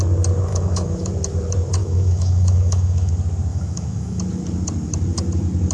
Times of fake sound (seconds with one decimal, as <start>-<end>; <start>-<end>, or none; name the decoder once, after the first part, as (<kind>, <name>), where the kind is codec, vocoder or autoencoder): 0.5-1.1 (autoencoder, DAC-VAE); 1.8-3.1; 3.5-4.2